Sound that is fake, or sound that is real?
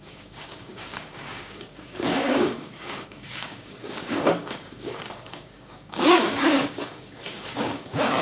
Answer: fake